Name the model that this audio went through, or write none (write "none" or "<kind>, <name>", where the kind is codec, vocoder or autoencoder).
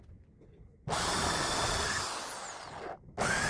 none